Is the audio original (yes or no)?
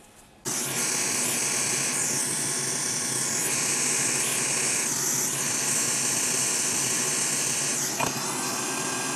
yes